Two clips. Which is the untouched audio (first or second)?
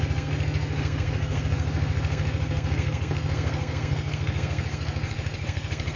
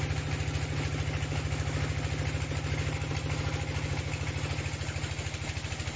second